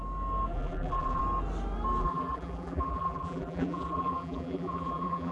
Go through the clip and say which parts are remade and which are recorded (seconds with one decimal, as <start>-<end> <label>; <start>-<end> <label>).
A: 0.0-0.5 recorded; 0.5-1.2 remade; 1.2-2.0 recorded; 2.0-5.3 remade